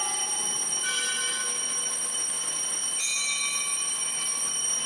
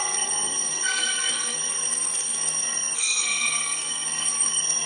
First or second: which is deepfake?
second